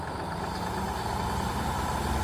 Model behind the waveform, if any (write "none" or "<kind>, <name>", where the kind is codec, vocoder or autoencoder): vocoder, BigVGAN v2